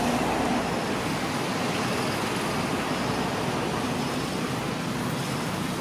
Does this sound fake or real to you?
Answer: real